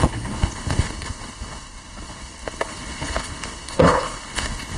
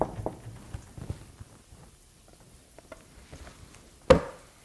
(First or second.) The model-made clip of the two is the first